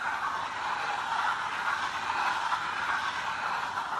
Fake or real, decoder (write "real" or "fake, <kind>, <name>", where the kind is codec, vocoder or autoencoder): real